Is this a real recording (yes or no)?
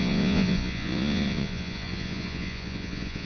no